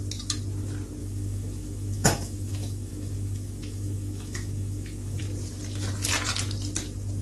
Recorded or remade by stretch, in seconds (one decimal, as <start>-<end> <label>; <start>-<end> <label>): 0.0-1.0 recorded; 1.0-5.2 remade; 5.2-7.2 recorded